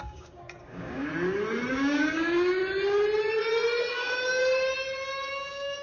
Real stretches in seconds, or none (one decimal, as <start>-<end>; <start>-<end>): 1.1-1.7; 2.6-3.9; 4.4-5.3